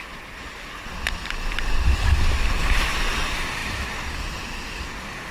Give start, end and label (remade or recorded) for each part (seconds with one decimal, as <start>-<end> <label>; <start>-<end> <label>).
0.0-5.3 recorded